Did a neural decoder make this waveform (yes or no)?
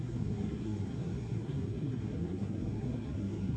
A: yes